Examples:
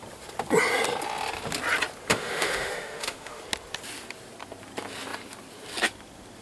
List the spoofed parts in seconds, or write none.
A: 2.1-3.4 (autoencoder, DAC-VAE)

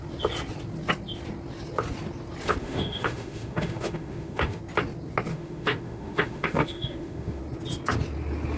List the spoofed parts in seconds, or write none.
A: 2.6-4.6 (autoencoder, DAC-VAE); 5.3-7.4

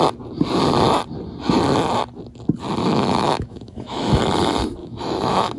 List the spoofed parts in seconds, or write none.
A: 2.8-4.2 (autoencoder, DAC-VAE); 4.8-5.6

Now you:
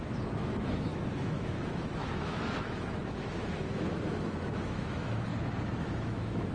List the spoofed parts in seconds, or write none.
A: 0.0-5.3 (autoencoder, DAC-VAE); 5.8-6.5

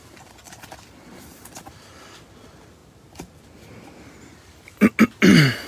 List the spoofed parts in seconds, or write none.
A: none